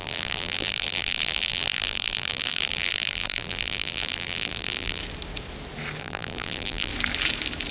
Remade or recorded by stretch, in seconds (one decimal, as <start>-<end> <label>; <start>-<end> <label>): 0.0-5.0 remade; 5.0-6.0 recorded; 6.0-6.9 remade; 6.9-7.7 recorded